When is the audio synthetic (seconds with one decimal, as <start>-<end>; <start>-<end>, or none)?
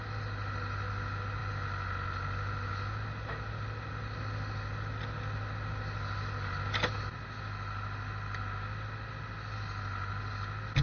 none